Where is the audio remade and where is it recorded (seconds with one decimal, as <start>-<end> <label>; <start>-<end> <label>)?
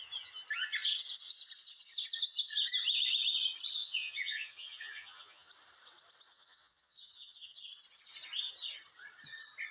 0.0-3.8 recorded; 3.8-5.5 remade; 5.5-6.3 recorded; 6.3-7.6 remade; 7.6-9.7 recorded